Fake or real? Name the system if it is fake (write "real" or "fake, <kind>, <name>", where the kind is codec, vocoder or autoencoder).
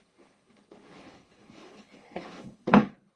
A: fake, codec, HILCodec